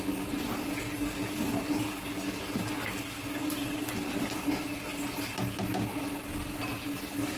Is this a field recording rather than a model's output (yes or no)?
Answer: yes